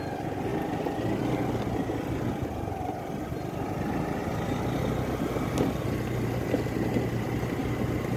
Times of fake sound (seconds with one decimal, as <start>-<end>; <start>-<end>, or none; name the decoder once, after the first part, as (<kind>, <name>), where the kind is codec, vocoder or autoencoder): 4.2-7.6 (vocoder, BigVGAN v2)